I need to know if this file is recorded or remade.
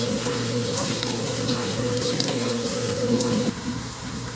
remade